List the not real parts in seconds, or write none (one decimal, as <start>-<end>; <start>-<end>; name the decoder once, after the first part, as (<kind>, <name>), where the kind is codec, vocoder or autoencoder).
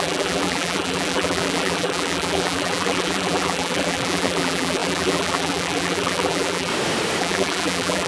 0.0-6.7 (vocoder, BigVGAN v2); 7.2-8.1